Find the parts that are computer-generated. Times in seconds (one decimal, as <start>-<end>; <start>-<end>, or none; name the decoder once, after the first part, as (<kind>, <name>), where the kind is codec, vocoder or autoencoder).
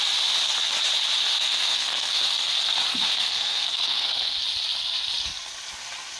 1.3-2.2 (codec, SNAC); 2.9-4.4